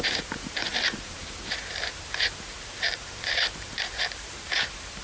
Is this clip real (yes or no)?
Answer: no